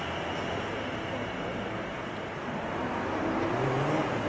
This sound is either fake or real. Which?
real